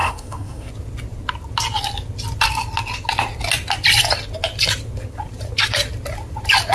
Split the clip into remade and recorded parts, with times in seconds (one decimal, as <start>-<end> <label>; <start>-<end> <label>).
0.0-0.7 remade; 0.7-6.7 recorded